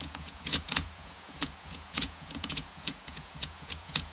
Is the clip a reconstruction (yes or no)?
yes